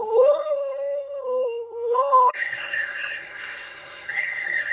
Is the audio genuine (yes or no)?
no